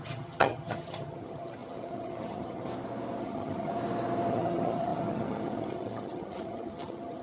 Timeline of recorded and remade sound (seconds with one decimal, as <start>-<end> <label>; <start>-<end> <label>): 0.0-2.7 remade; 2.7-3.2 recorded; 3.2-3.7 remade; 3.7-4.3 recorded; 4.3-7.2 remade